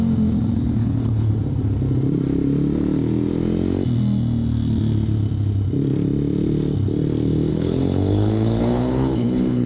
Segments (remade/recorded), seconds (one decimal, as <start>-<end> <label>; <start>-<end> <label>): 0.0-0.8 recorded; 0.8-1.3 remade; 1.3-7.5 recorded; 7.5-9.7 remade